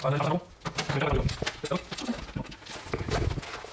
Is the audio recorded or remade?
recorded